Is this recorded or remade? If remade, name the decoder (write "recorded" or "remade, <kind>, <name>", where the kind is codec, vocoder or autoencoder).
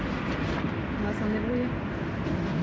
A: recorded